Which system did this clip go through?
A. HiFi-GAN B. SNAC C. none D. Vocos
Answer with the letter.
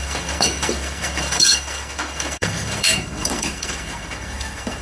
B